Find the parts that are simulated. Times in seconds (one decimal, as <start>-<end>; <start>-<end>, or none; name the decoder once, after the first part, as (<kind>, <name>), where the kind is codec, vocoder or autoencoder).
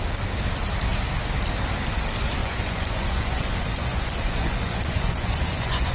2.4-5.9 (vocoder, Vocos)